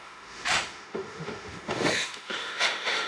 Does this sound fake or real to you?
fake